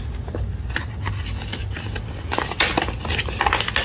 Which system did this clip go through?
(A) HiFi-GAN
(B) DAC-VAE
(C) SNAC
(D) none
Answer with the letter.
D